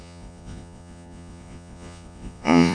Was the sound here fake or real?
fake